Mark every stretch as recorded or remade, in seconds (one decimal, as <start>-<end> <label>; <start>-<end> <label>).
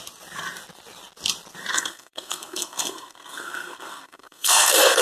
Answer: 0.0-1.7 recorded; 1.7-5.0 remade